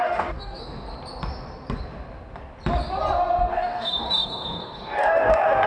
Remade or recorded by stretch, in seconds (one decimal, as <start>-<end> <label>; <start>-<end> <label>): 0.0-0.6 remade; 0.6-3.5 recorded; 3.5-5.7 remade